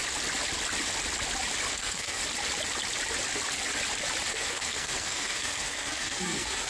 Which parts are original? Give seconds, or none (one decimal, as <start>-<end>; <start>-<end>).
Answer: 0.0-1.7; 2.2-4.3